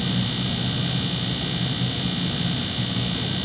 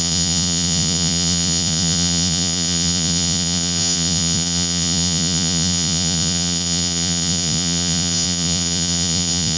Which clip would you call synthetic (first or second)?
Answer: second